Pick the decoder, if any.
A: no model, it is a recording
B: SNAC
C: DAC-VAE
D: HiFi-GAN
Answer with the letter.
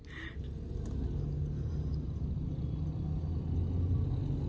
A